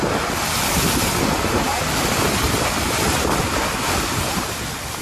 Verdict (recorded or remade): recorded